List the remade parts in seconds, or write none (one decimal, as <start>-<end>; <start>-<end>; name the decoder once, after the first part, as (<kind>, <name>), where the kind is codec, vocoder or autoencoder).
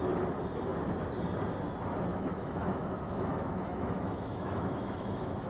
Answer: 2.1-5.5 (autoencoder, DAC-VAE)